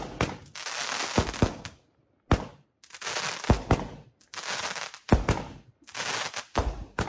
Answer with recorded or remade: recorded